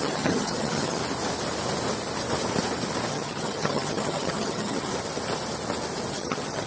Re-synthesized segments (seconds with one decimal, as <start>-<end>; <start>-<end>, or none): 0.0-1.0; 3.1-4.9; 6.1-6.7